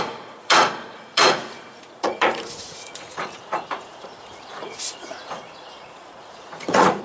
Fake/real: fake